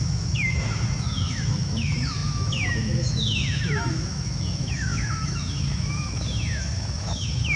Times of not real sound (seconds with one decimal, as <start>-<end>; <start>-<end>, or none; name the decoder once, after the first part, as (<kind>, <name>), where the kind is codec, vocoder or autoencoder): 0.0-7.6 (autoencoder, DAC-VAE)